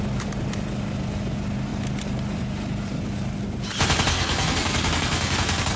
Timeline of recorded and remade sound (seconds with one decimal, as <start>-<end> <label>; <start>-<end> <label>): 0.0-4.1 recorded; 4.1-5.8 remade